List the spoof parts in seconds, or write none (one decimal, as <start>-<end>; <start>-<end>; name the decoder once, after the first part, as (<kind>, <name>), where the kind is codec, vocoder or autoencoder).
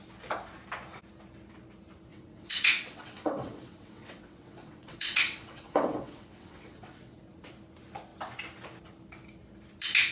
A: 2.1-7.2 (vocoder, WaveNeXt)